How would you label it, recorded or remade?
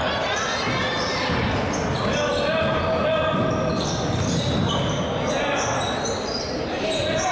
recorded